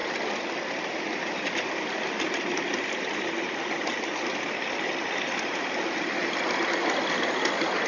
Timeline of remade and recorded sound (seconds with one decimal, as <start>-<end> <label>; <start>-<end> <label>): 0.0-7.9 recorded

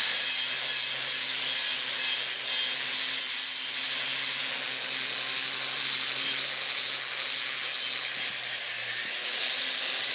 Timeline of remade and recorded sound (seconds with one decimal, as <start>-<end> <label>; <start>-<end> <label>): 0.0-10.1 recorded

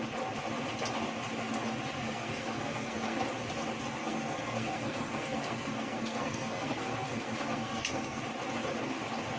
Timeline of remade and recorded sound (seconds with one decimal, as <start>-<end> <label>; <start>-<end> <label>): 0.0-2.0 recorded; 2.0-3.2 remade; 3.2-4.0 recorded; 4.0-8.2 remade; 8.2-9.4 recorded

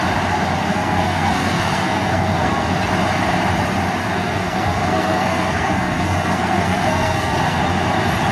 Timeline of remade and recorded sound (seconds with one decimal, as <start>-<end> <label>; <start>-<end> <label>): 0.0-0.6 recorded; 0.6-2.7 remade; 2.7-4.0 recorded; 4.0-7.6 remade; 7.6-8.3 recorded

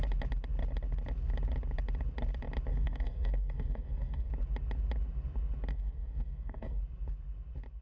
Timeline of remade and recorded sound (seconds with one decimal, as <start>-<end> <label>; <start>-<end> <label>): 0.0-2.7 recorded; 2.7-4.3 remade; 4.3-5.7 recorded; 5.7-6.8 remade; 6.8-7.8 recorded

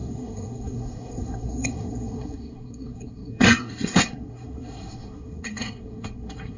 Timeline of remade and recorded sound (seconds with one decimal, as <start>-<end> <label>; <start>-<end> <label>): 0.0-6.6 remade